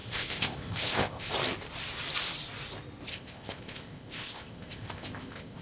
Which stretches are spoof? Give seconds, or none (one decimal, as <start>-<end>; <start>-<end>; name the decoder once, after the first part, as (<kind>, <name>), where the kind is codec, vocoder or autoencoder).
0.0-1.3 (codec, ZipCodec); 3.1-5.6